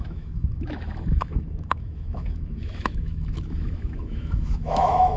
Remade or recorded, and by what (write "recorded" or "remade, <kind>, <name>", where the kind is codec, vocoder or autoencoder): remade, autoencoder, DAC-VAE